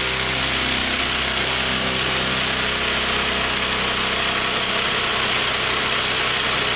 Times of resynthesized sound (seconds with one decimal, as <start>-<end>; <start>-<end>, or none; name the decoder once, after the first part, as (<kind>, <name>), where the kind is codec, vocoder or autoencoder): none